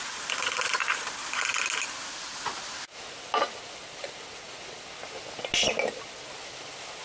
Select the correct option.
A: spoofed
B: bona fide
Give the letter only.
B